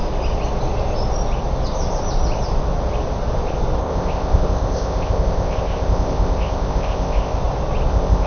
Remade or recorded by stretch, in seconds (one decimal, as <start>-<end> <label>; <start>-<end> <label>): 0.0-3.8 recorded; 3.8-7.4 remade; 7.4-7.9 recorded; 7.9-8.3 remade